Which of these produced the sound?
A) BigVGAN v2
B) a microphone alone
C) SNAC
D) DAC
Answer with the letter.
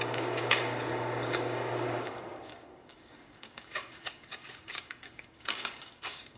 D